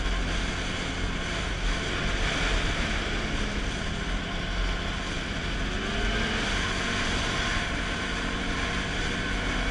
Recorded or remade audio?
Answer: recorded